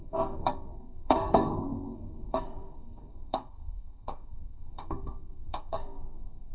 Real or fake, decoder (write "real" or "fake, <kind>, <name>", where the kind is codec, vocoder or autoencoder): fake, codec, SNAC